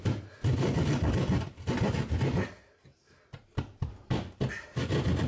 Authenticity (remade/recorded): recorded